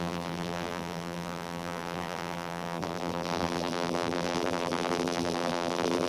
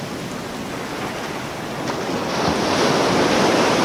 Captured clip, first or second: second